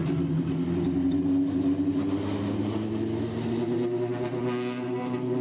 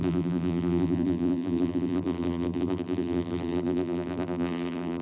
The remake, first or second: second